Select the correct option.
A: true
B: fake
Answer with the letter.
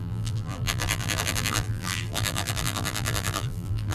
B